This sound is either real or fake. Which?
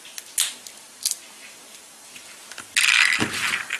real